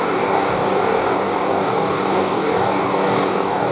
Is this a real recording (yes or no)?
no